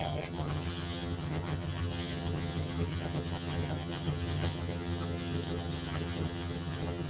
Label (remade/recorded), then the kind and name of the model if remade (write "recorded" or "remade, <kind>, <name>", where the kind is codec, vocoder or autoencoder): remade, vocoder, HiFi-GAN